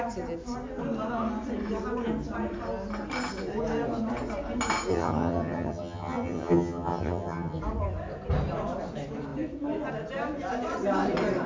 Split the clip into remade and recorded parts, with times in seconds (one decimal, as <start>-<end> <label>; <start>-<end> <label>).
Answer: 0.0-4.9 recorded; 4.9-7.6 remade; 7.6-11.5 recorded